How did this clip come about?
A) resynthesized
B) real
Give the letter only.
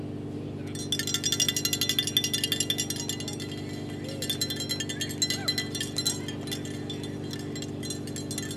B